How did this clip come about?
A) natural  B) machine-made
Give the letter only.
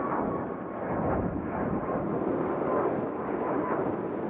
A